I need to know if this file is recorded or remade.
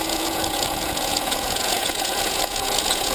remade